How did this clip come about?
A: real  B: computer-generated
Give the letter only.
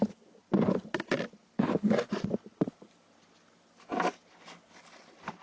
A